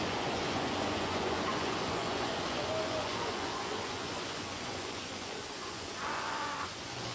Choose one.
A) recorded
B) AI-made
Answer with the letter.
B